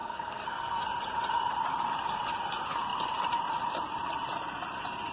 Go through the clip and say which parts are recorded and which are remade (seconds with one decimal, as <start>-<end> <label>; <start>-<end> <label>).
0.0-0.8 remade; 0.8-5.1 recorded